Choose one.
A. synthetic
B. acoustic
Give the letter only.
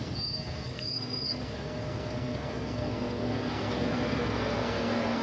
A